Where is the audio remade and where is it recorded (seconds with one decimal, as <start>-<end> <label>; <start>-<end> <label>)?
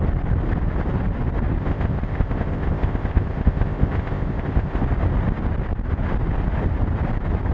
0.0-1.6 recorded; 1.6-4.8 remade; 4.8-7.5 recorded